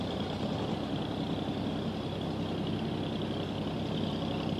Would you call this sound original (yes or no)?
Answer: yes